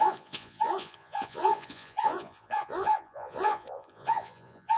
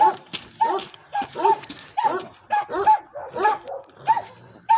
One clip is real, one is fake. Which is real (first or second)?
second